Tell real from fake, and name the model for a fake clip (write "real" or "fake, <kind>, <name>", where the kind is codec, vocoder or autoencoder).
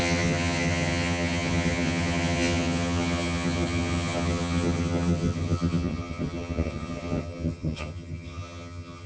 fake, vocoder, HiFi-GAN